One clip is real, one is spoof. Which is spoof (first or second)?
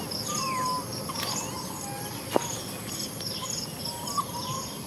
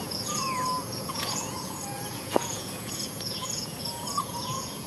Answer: second